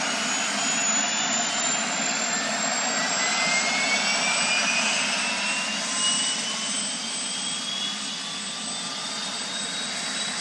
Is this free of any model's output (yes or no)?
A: yes